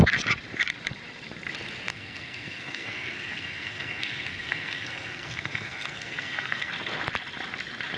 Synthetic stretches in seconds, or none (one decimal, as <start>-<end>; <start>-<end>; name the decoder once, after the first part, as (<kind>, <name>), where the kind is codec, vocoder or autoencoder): 1.9-6.7 (codec, SNAC)